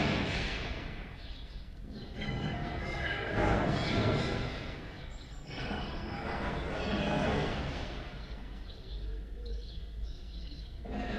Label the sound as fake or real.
fake